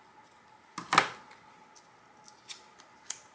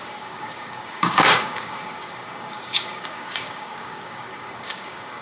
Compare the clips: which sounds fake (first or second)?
second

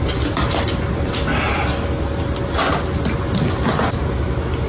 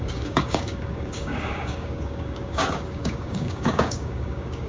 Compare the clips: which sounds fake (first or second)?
second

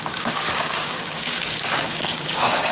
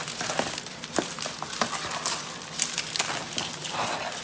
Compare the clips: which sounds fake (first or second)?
first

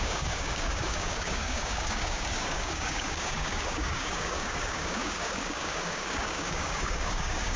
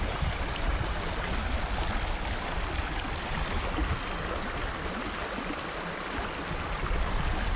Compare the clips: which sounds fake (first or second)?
first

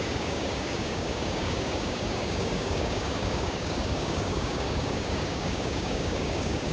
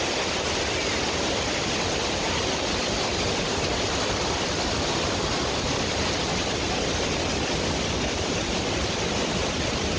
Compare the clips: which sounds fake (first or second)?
first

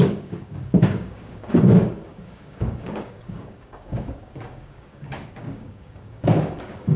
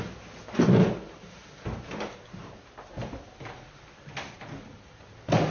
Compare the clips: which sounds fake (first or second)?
first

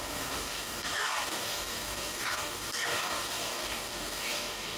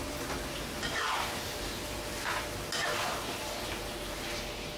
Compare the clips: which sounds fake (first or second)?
first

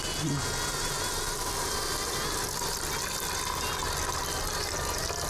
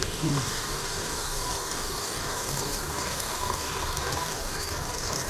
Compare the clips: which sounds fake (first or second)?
second